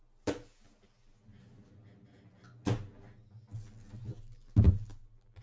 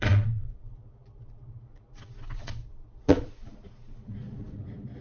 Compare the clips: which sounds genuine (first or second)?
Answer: first